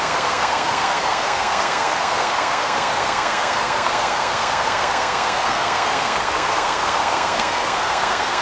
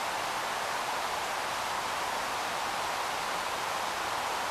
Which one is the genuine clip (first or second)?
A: second